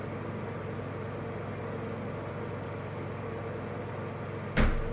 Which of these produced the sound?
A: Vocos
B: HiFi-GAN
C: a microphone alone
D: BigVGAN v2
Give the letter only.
C